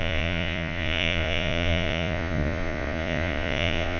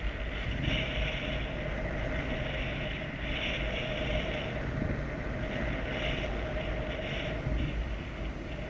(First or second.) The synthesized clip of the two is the first